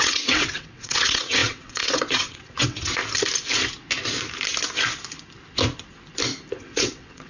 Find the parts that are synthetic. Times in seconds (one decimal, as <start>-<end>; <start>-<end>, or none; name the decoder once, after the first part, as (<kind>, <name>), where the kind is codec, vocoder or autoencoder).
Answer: 0.0-3.0 (vocoder, WaveNeXt); 6.6-7.3